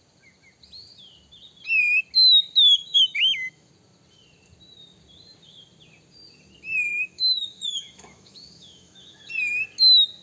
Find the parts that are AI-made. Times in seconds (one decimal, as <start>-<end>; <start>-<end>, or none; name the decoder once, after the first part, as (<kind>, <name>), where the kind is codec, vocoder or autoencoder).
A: 2.8-3.7 (autoencoder, DAC-VAE); 6.9-9.3